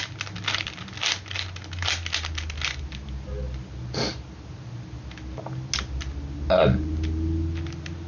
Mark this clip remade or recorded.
recorded